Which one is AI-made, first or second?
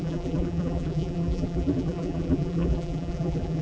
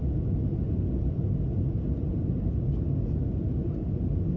first